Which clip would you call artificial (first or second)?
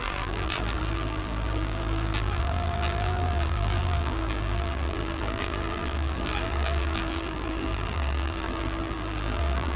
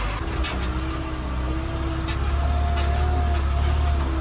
first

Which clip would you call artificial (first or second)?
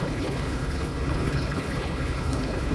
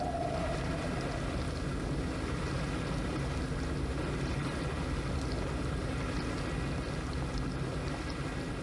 first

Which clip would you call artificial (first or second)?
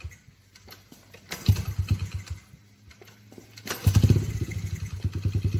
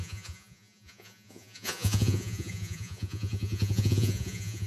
second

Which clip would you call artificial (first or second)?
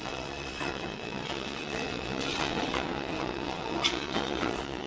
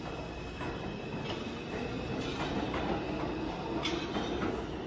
first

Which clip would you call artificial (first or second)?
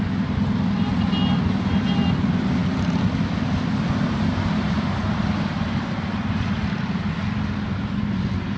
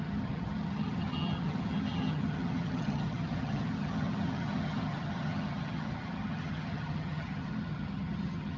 second